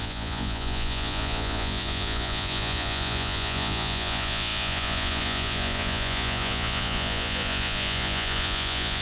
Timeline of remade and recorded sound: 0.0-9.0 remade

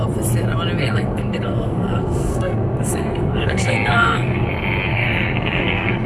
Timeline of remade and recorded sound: 0.0-0.8 recorded; 0.8-4.5 remade; 4.5-4.9 recorded; 4.9-6.1 remade

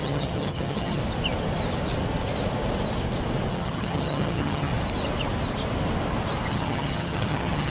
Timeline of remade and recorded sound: 0.0-1.0 remade; 1.0-3.5 recorded; 3.5-4.7 remade; 4.7-6.5 recorded; 6.5-7.7 remade